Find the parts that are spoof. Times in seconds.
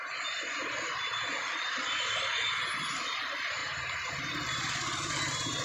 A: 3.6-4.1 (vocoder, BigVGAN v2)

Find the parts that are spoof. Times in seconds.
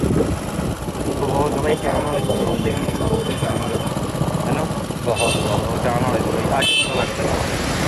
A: 1.7-3.9 (codec, SNAC)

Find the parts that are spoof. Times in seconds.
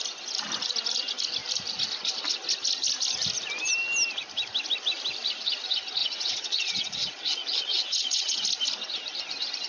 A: 6.0-8.4 (vocoder, Vocos)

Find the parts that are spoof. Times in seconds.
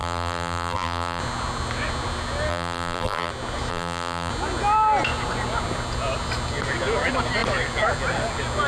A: 0.0-1.2 (vocoder, BigVGAN v2); 2.5-3.3; 3.7-4.3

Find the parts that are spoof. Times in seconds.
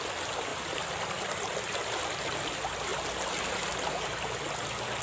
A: 0.5-2.2 (vocoder, BigVGAN v2)